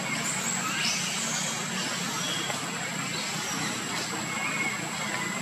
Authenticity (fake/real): real